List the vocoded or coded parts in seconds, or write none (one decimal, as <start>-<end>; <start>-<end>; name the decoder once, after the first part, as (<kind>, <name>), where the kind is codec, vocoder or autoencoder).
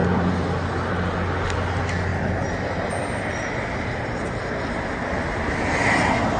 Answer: 2.1-4.9 (vocoder, BigVGAN v2)